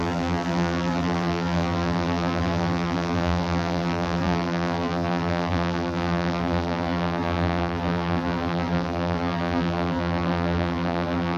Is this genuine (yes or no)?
no